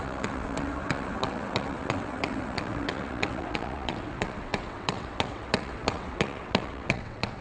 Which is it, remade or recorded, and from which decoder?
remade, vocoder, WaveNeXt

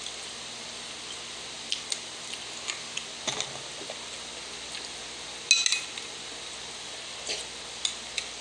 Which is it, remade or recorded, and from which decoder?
recorded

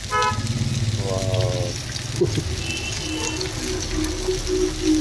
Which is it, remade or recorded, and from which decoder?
recorded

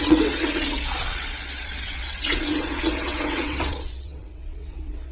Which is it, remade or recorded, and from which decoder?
remade, vocoder, WaveNeXt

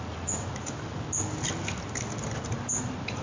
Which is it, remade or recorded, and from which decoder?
recorded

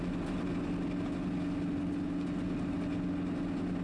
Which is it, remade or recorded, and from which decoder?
recorded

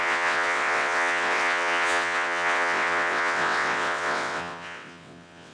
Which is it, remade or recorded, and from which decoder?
remade, vocoder, WaveNeXt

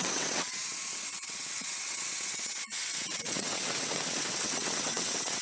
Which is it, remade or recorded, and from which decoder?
remade, vocoder, WaveNeXt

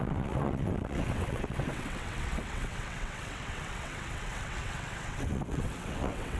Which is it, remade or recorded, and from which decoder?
remade, vocoder, WaveNeXt